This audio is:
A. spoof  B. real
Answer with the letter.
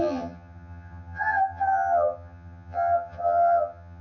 A